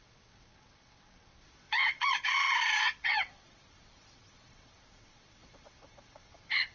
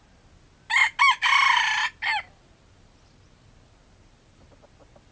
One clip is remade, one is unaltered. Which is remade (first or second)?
first